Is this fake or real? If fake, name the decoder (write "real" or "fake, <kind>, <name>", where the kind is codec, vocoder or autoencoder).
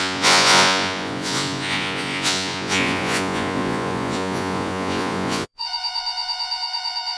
fake, vocoder, Vocos